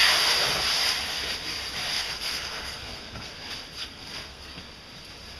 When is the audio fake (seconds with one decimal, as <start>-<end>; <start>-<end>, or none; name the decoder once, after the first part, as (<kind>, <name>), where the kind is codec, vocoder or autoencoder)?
1.9-3.3 (codec, SNAC); 3.8-4.6